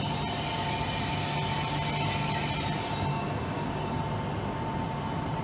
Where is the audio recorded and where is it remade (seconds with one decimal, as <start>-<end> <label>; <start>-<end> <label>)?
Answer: 0.0-3.1 recorded; 3.1-4.0 remade; 4.0-5.4 recorded